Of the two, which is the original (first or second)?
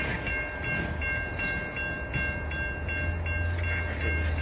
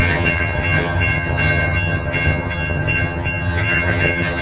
first